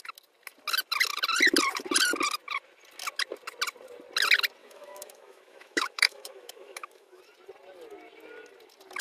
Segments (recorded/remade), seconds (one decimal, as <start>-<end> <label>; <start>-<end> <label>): 0.0-4.6 recorded; 4.6-7.2 remade; 7.2-9.0 recorded